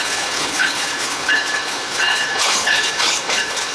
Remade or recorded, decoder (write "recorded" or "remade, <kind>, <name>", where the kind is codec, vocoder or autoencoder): remade, codec, HILCodec